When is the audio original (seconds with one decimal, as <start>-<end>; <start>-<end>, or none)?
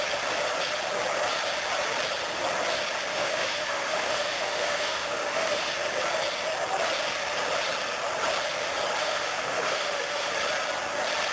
0.0-3.1; 5.7-9.0; 10.3-11.3